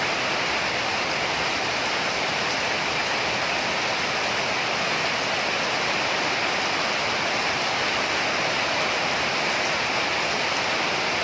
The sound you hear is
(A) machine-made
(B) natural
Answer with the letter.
B